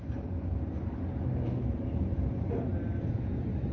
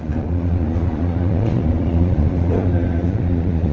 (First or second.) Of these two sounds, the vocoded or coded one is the second